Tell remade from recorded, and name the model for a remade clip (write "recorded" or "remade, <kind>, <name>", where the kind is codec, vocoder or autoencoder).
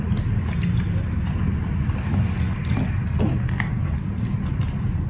recorded